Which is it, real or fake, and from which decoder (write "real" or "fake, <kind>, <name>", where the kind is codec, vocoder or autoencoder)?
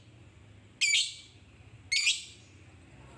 real